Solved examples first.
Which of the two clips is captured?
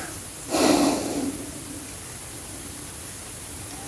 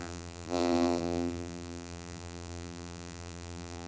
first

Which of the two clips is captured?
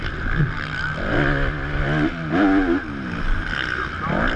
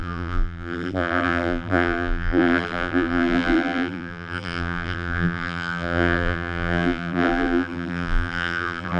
first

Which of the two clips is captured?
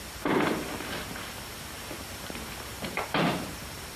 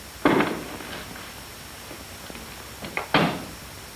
second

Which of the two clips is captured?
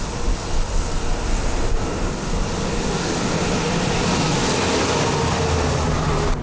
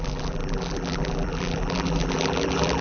first